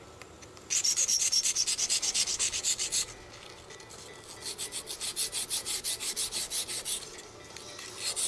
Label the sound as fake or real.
real